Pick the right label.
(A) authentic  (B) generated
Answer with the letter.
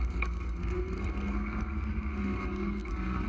B